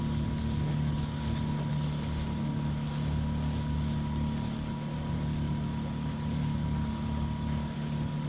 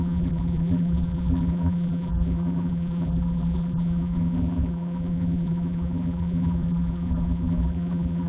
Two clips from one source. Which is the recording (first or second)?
first